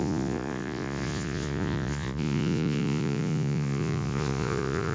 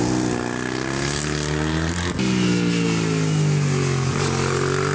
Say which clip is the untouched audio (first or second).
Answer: second